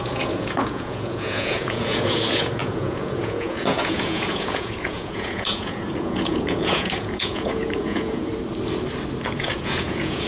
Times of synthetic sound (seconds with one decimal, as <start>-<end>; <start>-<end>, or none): 0.0-8.3; 9.4-10.3